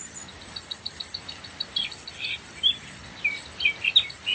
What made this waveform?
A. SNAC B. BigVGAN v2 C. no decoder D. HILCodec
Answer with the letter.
C